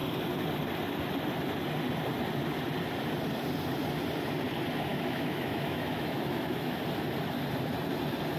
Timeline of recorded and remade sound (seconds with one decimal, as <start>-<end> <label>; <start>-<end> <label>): 0.0-4.9 recorded; 4.9-6.8 remade; 6.8-8.4 recorded